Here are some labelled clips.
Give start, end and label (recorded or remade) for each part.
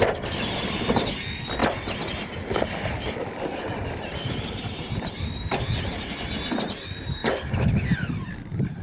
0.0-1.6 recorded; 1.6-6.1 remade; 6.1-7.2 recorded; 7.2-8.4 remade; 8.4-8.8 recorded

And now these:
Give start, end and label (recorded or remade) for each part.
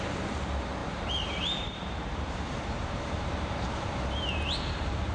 0.0-0.8 recorded; 0.8-3.9 remade; 3.9-5.1 recorded